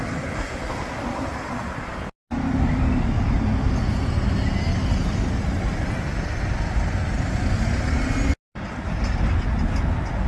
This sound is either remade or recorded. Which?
recorded